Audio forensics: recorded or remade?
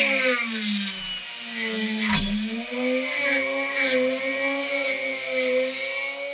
recorded